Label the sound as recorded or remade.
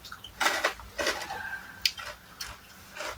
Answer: recorded